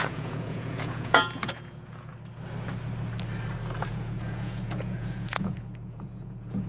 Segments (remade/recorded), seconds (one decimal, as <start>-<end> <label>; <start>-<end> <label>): 0.0-2.1 remade; 2.1-3.9 recorded; 3.9-6.7 remade